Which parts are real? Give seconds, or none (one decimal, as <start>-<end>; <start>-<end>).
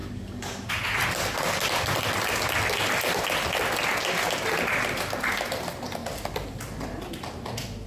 0.7-7.9